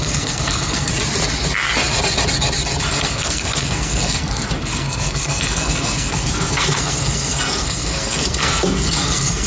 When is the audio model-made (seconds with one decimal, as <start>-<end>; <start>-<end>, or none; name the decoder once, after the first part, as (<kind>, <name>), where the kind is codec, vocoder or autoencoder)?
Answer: 0.0-0.9 (codec, SNAC); 2.9-9.5